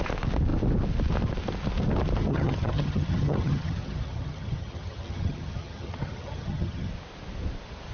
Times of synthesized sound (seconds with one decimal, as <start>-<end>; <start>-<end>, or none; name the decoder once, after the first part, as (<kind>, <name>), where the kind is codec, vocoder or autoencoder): 2.2-6.9 (vocoder, HiFi-GAN)